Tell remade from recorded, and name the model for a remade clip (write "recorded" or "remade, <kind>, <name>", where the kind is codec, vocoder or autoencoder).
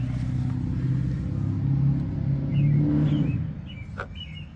recorded